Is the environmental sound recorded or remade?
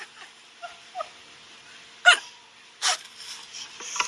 recorded